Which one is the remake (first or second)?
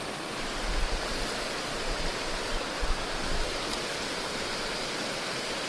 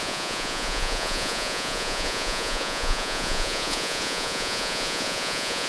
second